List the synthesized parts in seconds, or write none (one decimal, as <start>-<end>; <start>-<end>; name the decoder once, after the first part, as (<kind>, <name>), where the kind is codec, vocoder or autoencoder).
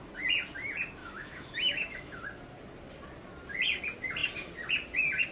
1.0-2.2 (autoencoder, DAC-VAE)